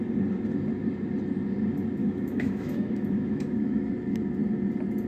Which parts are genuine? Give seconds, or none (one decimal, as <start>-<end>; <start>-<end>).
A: 0.0-2.0; 3.9-5.1